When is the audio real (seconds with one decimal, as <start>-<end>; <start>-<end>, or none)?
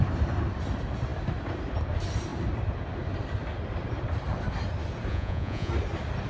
0.0-5.1; 5.7-6.3